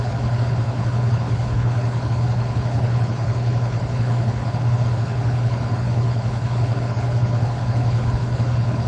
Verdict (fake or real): fake